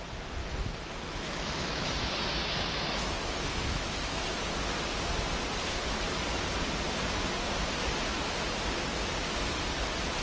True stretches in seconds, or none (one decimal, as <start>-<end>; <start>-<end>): 0.0-0.4; 4.2-10.2